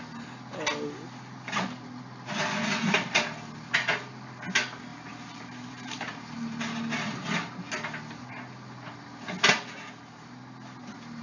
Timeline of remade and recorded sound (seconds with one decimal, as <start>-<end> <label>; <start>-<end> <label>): 0.0-4.9 recorded; 4.9-6.6 remade; 6.6-11.2 recorded